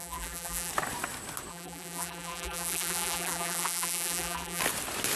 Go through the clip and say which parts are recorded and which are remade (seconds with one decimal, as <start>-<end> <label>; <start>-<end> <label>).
0.0-0.7 remade; 0.7-1.5 recorded; 1.5-4.6 remade; 4.6-5.2 recorded